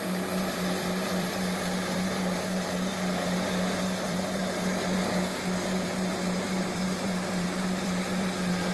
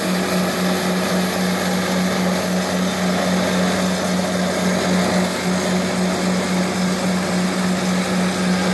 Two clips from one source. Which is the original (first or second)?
second